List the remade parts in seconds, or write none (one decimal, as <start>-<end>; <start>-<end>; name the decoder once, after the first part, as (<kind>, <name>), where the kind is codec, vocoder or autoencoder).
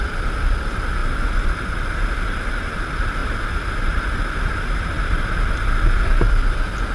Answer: none